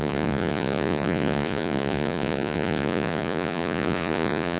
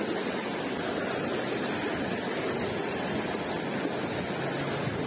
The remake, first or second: first